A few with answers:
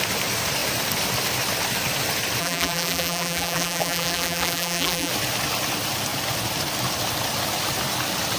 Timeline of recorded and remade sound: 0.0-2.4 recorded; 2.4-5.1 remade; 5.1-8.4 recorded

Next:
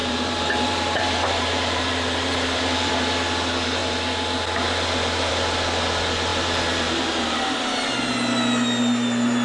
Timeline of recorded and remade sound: 0.0-2.9 remade; 2.9-6.3 recorded; 6.3-7.9 remade; 7.9-9.4 recorded

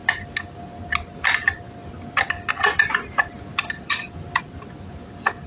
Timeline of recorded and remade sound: 0.0-5.5 recorded

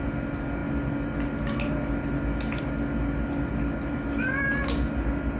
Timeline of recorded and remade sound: 0.0-5.4 recorded